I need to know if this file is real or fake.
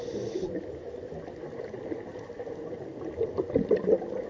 real